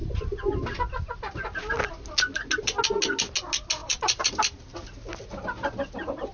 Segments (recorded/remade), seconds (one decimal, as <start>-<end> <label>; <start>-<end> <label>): 0.0-0.5 remade; 0.5-3.8 recorded; 3.8-4.6 remade; 4.6-6.3 recorded